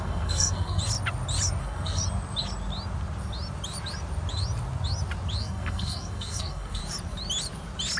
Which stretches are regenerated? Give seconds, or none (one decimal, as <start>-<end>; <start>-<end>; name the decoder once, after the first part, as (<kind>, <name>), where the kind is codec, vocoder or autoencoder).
0.0-0.8 (codec, SNAC); 1.6-2.0; 5.4-6.8